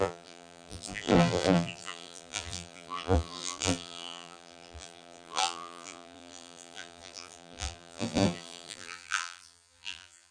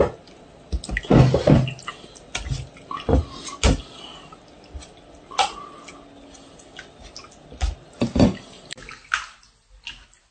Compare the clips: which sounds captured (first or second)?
second